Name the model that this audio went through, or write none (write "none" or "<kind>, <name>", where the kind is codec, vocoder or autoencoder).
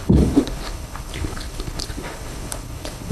codec, HILCodec